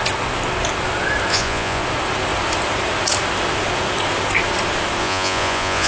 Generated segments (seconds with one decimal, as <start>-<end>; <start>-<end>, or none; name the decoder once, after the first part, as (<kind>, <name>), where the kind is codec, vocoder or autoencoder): 1.3-1.8 (vocoder, Vocos); 5.0-5.9